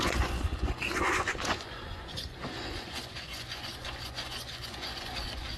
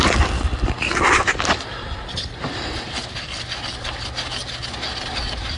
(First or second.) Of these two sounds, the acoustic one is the second